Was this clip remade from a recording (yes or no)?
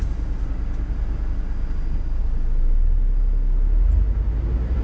no